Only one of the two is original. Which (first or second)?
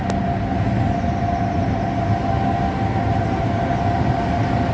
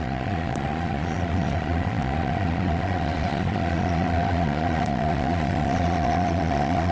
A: first